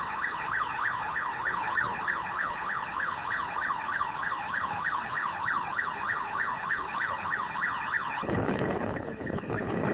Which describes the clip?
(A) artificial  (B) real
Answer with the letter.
A